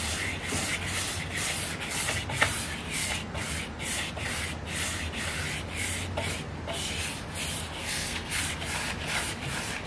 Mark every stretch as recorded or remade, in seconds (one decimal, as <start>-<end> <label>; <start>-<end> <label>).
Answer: 0.0-7.8 recorded; 7.8-8.4 remade; 8.4-9.9 recorded